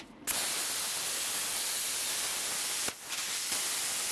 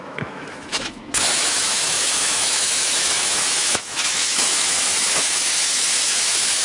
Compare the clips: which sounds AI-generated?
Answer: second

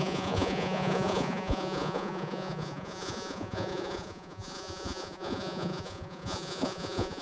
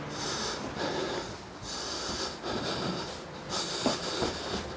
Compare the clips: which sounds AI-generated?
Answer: first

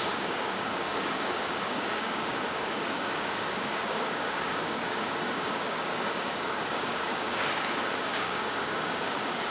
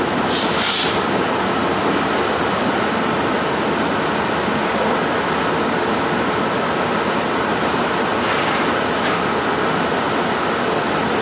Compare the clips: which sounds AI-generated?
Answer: first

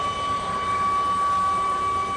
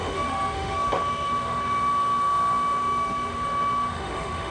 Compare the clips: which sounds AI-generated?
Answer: second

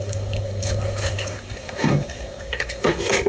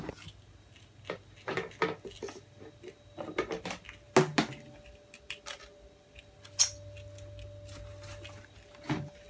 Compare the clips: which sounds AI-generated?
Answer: first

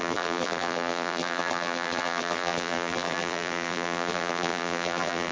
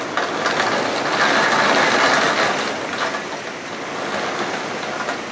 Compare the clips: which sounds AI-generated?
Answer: first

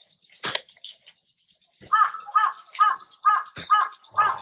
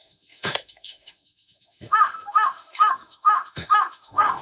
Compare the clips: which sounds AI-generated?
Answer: second